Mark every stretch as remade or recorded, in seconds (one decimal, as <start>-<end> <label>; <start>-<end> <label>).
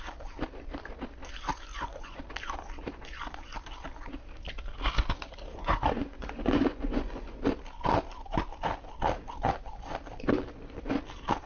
0.0-1.7 recorded; 1.7-2.2 remade; 2.2-5.5 recorded; 5.5-7.4 remade; 7.4-11.5 recorded